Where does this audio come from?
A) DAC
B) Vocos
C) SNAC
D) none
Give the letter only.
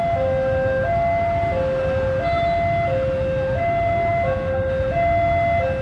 D